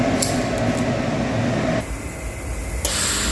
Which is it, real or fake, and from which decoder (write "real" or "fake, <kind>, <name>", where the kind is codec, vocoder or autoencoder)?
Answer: real